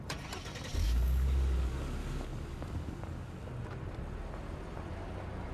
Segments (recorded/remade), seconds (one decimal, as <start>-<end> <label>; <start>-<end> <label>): 0.0-0.7 recorded; 0.7-3.5 remade; 3.5-5.5 recorded